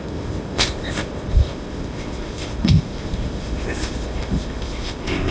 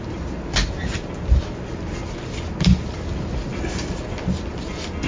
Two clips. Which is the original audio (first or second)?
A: second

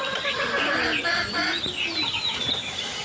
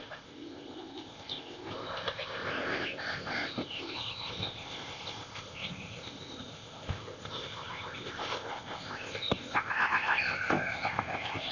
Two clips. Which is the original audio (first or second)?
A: first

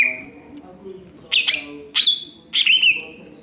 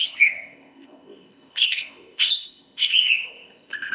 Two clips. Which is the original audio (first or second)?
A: first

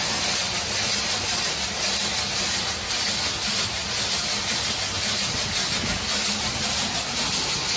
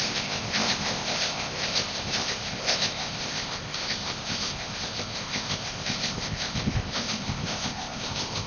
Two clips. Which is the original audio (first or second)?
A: first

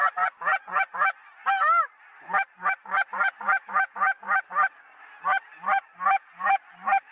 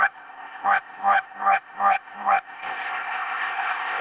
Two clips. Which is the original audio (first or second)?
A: first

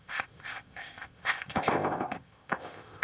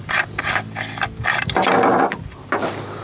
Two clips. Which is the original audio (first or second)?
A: second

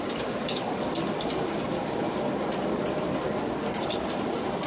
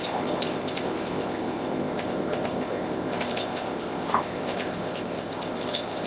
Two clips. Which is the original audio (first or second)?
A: first